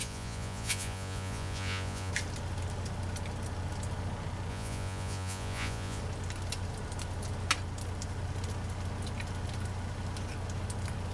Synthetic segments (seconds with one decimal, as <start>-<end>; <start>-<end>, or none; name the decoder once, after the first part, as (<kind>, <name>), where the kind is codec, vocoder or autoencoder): 0.0-2.1 (vocoder, Vocos); 4.5-6.0